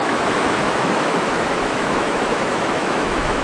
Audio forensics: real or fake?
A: fake